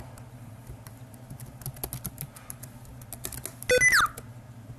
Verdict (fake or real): real